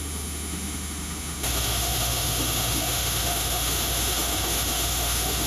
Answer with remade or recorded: remade